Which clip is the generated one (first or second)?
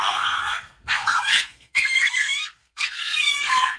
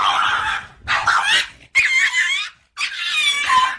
first